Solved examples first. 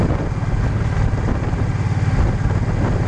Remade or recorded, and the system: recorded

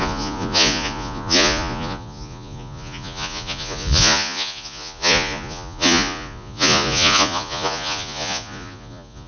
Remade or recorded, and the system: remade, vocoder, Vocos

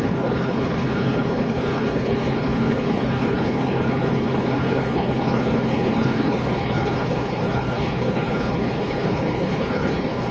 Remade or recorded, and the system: remade, codec, HILCodec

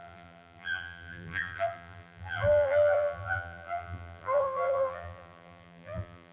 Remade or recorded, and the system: remade, vocoder, BigVGAN v2